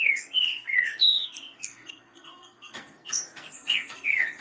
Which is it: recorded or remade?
remade